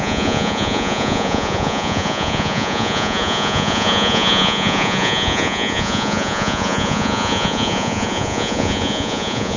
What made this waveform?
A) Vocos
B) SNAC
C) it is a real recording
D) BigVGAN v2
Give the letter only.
A